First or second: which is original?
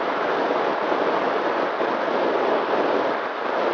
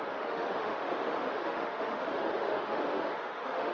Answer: first